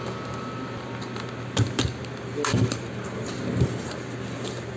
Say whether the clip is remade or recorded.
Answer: recorded